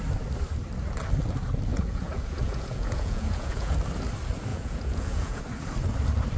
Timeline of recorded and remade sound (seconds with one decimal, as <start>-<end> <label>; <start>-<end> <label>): 0.0-1.7 recorded; 1.7-3.7 remade; 3.7-4.5 recorded; 4.5-5.4 remade; 5.4-6.4 recorded